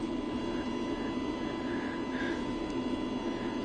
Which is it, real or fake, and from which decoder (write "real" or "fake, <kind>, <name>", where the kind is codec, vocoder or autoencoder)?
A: real